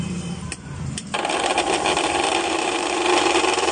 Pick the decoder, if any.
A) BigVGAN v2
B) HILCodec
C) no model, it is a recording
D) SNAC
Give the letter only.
A